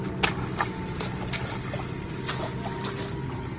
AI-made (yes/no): no